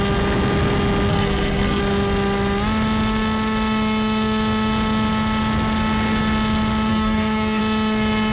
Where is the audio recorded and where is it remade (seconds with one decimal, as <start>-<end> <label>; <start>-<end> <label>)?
0.0-1.1 recorded; 1.1-1.8 remade; 1.8-6.9 recorded; 6.9-7.6 remade; 7.6-8.3 recorded